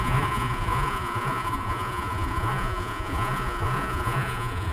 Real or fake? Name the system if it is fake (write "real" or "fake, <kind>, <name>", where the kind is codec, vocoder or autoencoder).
fake, vocoder, Vocos